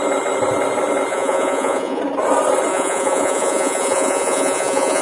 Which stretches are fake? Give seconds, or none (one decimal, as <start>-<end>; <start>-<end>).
1.1-2.0; 2.7-5.0